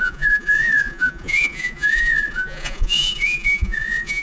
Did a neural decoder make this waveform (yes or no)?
yes